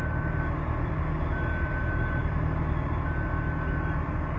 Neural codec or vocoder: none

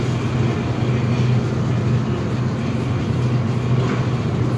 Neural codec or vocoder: none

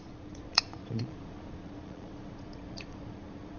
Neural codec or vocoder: vocoder, Vocos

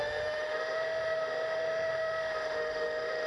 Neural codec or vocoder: autoencoder, DAC-VAE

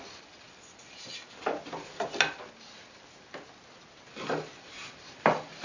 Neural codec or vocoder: none